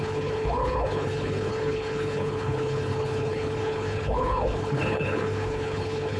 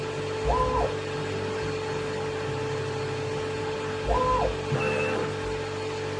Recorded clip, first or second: second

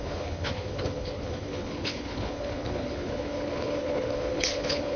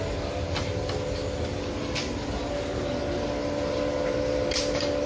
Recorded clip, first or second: second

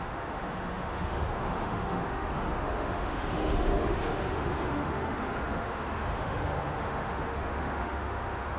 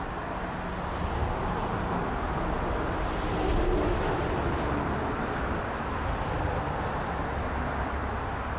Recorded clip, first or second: second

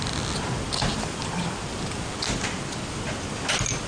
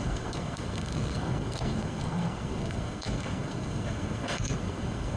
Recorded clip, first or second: first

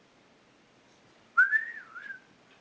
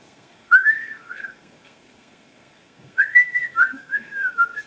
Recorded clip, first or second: first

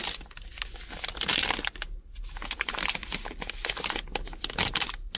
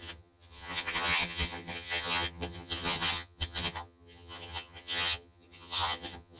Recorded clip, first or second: first